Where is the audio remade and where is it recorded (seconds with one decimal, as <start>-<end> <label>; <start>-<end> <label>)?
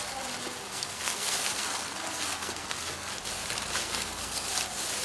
0.0-0.7 recorded; 0.7-3.1 remade; 3.1-3.8 recorded; 3.8-4.5 remade; 4.5-5.0 recorded